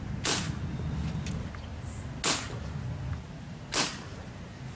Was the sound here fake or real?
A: real